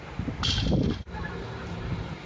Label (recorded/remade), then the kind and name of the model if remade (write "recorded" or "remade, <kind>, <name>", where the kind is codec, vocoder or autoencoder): recorded